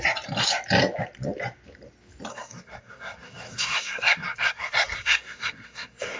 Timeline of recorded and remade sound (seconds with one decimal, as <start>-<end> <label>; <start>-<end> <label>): 0.0-2.3 recorded; 2.3-6.2 remade

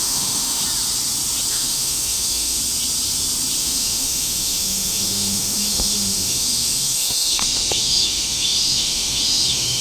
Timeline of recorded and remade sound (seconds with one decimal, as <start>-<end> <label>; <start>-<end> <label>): 0.0-0.6 remade; 0.6-1.5 recorded; 1.5-2.6 remade; 2.6-3.6 recorded; 3.6-9.8 remade

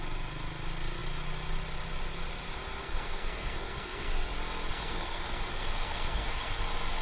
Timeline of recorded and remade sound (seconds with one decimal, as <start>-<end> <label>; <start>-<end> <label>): 0.0-2.8 recorded; 2.8-4.1 remade; 4.1-4.7 recorded; 4.7-6.6 remade; 6.6-7.0 recorded

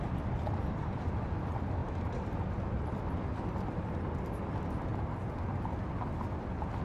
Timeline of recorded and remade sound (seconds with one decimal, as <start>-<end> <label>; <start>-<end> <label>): 0.0-6.8 recorded

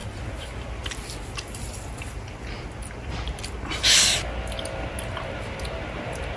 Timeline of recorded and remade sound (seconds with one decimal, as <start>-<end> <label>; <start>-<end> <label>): 0.0-6.4 recorded

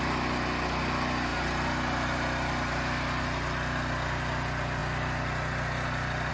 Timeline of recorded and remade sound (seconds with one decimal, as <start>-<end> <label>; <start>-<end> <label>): 0.0-6.3 recorded

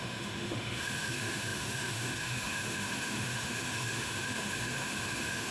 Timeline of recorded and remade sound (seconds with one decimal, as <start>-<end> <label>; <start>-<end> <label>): 0.0-5.5 remade